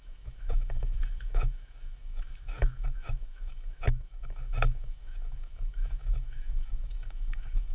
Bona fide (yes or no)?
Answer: no